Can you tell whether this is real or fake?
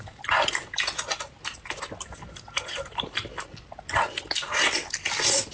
real